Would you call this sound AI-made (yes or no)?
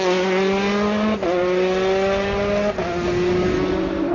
no